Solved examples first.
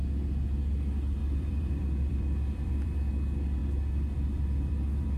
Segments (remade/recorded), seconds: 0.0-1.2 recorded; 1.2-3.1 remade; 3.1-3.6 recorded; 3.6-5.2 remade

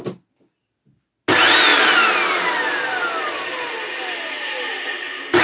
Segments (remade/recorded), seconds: 0.0-5.4 recorded

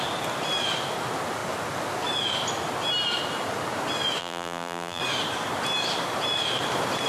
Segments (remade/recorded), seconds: 0.0-4.2 recorded; 4.2-5.0 remade; 5.0-7.1 recorded

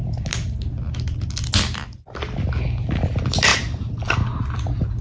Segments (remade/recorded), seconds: 0.0-3.0 recorded; 3.0-5.0 remade